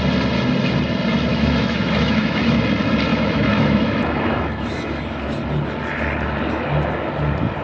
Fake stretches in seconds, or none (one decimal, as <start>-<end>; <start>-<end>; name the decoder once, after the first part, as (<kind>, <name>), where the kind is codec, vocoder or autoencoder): 1.3-2.6 (autoencoder, DAC-VAE); 3.1-5.0